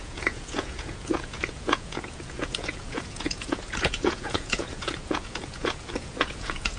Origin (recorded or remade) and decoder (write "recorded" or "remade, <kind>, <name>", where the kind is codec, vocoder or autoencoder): remade, vocoder, Vocos